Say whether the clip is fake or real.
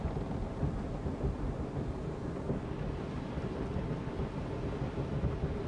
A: real